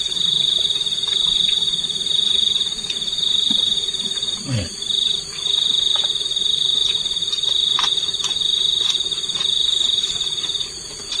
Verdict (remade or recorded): recorded